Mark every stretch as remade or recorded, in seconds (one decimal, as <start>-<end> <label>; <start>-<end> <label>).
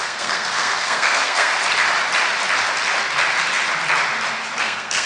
0.0-1.5 remade; 1.5-4.6 recorded; 4.6-5.1 remade